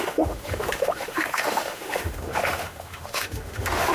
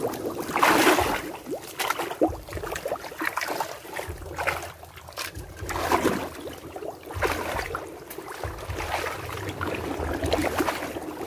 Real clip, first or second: second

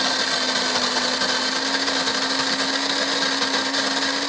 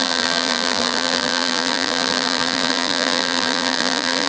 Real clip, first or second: first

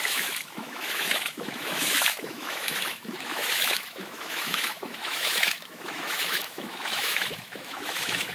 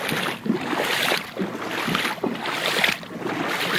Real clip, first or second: second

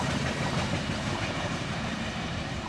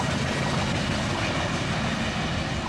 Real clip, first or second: second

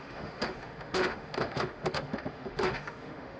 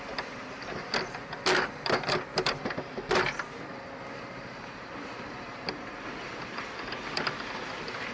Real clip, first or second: second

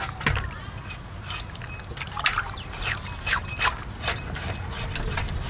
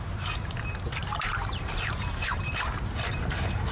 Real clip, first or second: first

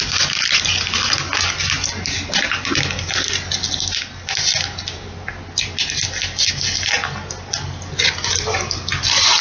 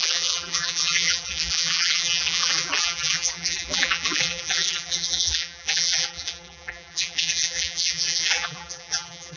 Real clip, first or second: first